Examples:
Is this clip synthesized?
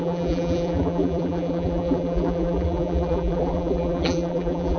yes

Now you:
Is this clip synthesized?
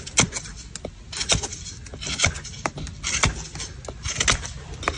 no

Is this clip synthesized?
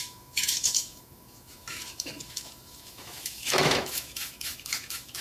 yes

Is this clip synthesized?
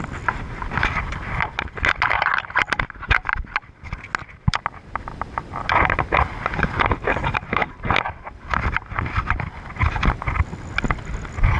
no